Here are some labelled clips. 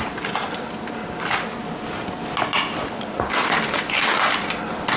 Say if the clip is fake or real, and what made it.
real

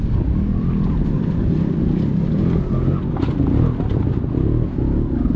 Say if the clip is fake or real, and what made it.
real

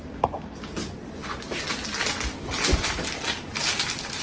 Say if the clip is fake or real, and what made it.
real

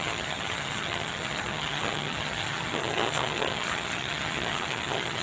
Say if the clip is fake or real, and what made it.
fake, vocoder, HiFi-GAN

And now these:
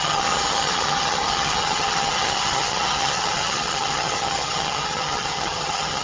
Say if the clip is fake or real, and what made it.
fake, vocoder, HiFi-GAN